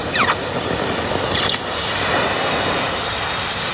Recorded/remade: recorded